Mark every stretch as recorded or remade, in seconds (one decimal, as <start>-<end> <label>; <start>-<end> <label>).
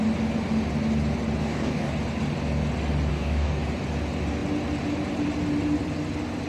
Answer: 0.0-1.4 recorded; 1.4-1.9 remade; 1.9-3.1 recorded; 3.1-3.6 remade; 3.6-6.5 recorded